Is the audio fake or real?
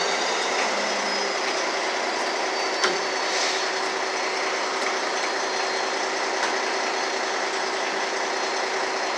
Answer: real